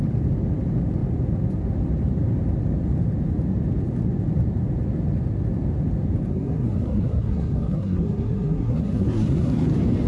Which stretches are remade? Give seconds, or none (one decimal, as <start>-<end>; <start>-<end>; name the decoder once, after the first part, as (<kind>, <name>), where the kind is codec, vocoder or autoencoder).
6.3-9.7 (codec, SNAC)